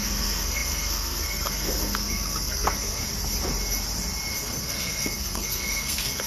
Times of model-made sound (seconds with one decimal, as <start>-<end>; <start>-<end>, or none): 0.0-3.0; 4.3-6.3